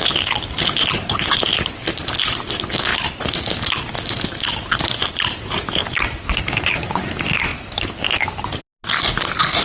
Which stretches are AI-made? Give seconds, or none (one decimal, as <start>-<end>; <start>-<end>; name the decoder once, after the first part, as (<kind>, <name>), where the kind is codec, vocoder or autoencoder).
none

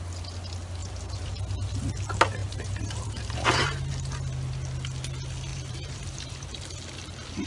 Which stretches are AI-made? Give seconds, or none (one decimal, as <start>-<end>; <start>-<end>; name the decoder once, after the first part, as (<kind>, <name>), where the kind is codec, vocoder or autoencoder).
0.8-1.3 (vocoder, BigVGAN v2); 2.4-3.9; 5.5-6.5

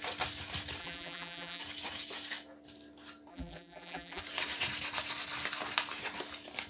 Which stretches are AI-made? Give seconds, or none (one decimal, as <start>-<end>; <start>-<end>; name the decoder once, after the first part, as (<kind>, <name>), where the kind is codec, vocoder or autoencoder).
0.8-1.6 (vocoder, BigVGAN v2); 3.3-4.2

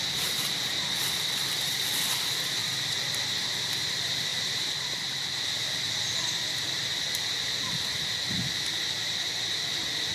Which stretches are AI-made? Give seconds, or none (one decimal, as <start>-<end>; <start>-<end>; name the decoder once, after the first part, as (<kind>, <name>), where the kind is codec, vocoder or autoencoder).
4.3-5.1 (vocoder, BigVGAN v2)

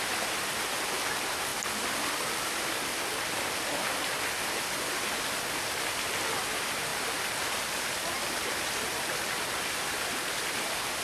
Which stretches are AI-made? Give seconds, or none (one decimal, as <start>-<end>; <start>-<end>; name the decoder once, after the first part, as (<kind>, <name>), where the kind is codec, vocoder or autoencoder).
6.9-9.6 (vocoder, BigVGAN v2)